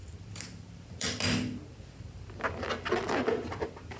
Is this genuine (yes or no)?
no